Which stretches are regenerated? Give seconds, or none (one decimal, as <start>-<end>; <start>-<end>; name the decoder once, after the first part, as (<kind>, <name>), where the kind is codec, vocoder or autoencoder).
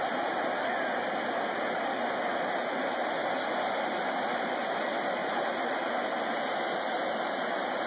5.2-5.9 (vocoder, BigVGAN v2); 6.7-7.9